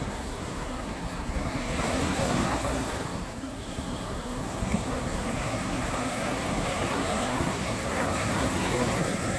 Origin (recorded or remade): remade